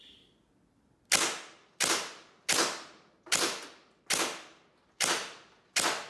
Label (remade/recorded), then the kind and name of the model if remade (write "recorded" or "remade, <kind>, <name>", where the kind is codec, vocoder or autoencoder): recorded